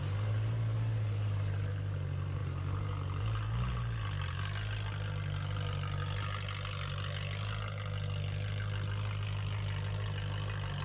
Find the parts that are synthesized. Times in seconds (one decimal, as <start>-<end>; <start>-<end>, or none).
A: none